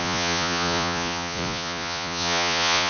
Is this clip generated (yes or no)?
yes